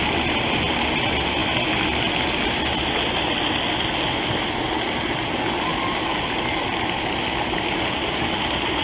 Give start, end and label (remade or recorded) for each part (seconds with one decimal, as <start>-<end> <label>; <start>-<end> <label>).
0.0-8.8 recorded